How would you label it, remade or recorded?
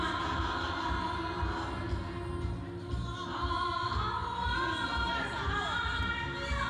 recorded